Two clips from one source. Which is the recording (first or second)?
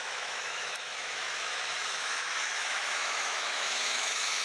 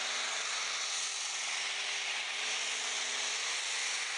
second